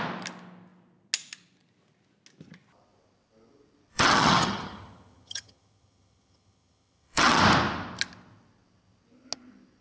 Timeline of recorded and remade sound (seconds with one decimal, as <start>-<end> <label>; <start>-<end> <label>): 0.0-3.9 recorded; 3.9-7.4 remade; 7.4-9.8 recorded